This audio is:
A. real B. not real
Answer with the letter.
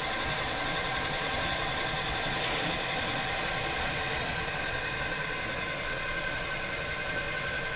B